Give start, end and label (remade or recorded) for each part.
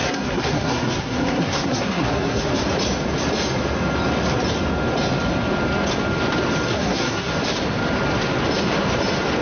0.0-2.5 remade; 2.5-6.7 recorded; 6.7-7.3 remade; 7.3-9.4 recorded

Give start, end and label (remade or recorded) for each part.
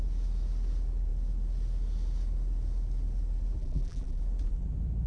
0.0-3.6 recorded; 3.6-4.2 remade; 4.2-5.1 recorded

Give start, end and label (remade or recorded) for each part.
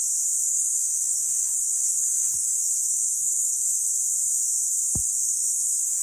0.0-0.4 recorded; 0.4-4.0 remade; 4.0-5.0 recorded; 5.0-6.0 remade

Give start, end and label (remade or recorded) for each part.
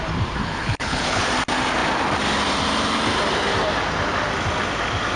0.0-0.4 recorded; 0.4-1.3 remade; 1.3-5.2 recorded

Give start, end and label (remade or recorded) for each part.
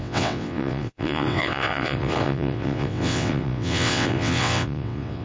0.0-5.2 remade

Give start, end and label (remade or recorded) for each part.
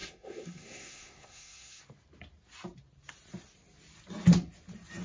0.0-1.8 remade; 1.8-5.0 recorded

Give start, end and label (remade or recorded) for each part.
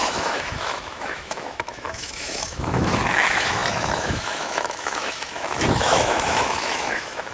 0.0-7.3 remade